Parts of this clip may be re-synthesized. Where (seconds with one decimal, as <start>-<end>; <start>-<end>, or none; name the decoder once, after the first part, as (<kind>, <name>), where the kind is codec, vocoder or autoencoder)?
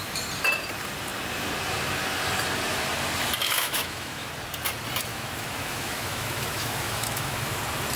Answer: 3.4-4.3 (autoencoder, DAC-VAE); 5.1-7.6